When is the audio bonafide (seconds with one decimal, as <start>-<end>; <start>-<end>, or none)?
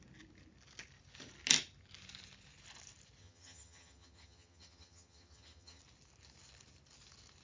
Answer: 0.0-3.2; 5.8-7.4